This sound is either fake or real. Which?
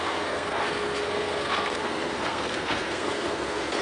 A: fake